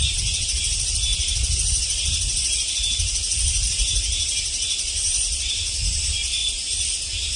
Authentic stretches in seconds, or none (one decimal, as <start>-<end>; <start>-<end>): 6.4-7.0